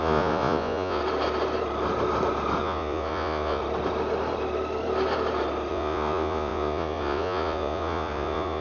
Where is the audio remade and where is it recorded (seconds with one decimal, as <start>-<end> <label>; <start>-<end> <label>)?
0.0-1.0 remade; 1.0-2.6 recorded; 2.6-3.6 remade; 3.6-5.7 recorded; 5.7-8.6 remade